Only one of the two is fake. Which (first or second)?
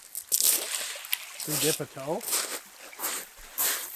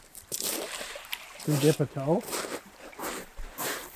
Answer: second